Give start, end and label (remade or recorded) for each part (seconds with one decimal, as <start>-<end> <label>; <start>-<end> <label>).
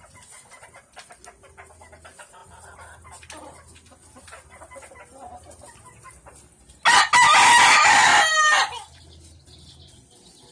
0.0-10.5 recorded